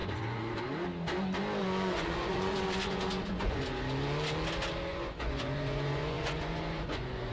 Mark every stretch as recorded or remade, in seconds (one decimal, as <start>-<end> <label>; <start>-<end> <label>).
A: 0.0-0.6 remade; 0.6-1.6 recorded; 1.6-3.6 remade; 3.6-4.9 recorded; 4.9-7.3 remade